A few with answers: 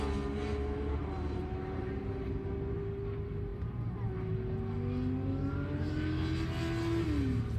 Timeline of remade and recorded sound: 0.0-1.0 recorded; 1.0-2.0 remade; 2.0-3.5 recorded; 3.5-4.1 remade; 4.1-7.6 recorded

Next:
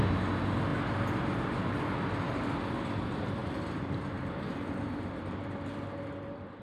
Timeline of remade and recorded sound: 0.0-3.4 recorded; 3.4-6.6 remade

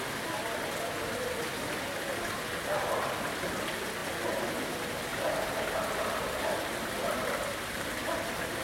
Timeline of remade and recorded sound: 0.0-5.1 recorded; 5.1-7.8 remade; 7.8-8.6 recorded

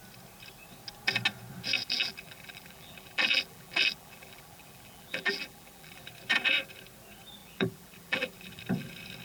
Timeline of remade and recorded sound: 0.0-1.8 recorded; 1.8-6.1 remade; 6.1-7.4 recorded; 7.4-8.6 remade; 8.6-9.2 recorded

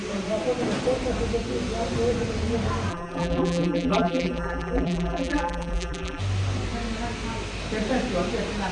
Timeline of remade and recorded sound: 0.0-2.9 recorded; 2.9-6.2 remade; 6.2-8.7 recorded

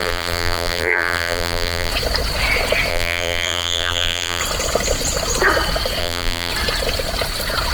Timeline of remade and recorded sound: 0.0-1.9 remade; 1.9-2.9 recorded; 2.9-4.4 remade; 4.4-6.0 recorded; 6.0-6.5 remade; 6.5-7.7 recorded